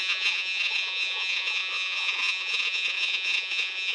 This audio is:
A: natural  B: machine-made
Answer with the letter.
B